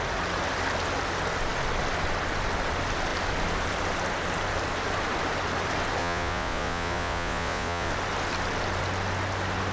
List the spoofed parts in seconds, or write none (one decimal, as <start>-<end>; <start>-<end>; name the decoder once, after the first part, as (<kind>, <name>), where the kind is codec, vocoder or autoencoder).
6.0-7.9 (vocoder, Vocos)